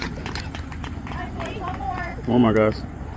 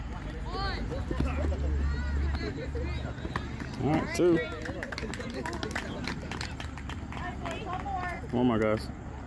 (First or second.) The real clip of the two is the second